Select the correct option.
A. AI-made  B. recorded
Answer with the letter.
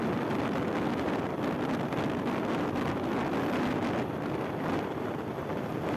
B